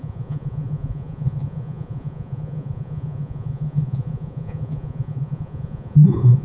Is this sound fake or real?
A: fake